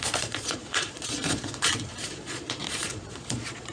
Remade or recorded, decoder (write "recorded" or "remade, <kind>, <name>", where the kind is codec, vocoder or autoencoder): remade, vocoder, Vocos